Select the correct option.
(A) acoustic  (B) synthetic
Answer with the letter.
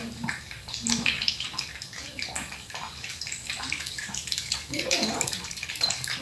B